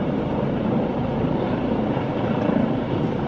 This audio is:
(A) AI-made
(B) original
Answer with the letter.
A